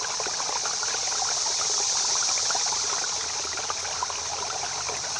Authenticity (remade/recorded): recorded